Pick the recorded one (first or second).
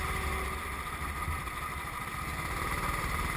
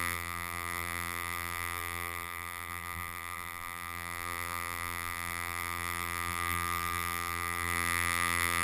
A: first